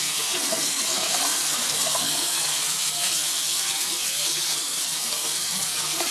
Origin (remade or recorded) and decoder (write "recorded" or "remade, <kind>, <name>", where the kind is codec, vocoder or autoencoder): remade, codec, SNAC